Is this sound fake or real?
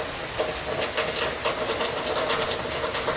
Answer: real